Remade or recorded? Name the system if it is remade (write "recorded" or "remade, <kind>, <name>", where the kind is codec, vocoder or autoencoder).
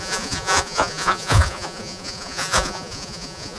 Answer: remade, vocoder, Vocos